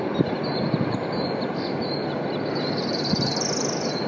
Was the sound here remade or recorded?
recorded